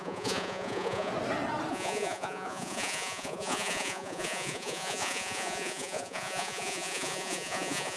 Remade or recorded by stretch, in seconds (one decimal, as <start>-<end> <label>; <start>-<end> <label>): 0.0-1.1 remade; 1.1-1.7 recorded; 1.7-8.0 remade